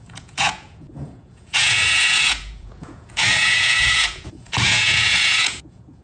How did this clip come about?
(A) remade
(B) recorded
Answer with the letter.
A